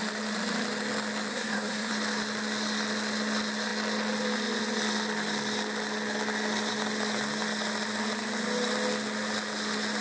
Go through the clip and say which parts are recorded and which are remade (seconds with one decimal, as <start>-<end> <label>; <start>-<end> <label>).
0.0-1.3 recorded; 1.3-1.9 remade; 1.9-10.0 recorded